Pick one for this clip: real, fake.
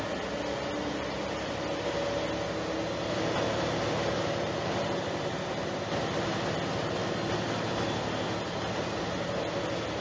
real